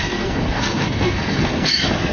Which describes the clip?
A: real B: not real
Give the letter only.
B